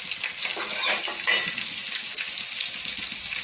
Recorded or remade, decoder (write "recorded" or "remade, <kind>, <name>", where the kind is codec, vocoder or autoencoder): recorded